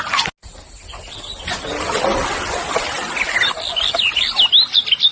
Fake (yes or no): no